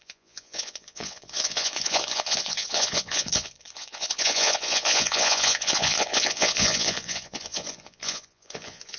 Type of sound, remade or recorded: remade